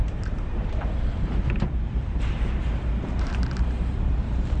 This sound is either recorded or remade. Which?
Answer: remade